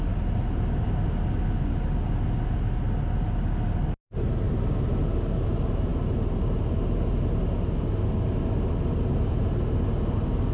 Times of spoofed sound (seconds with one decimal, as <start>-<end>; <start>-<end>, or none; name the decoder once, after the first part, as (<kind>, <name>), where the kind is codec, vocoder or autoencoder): none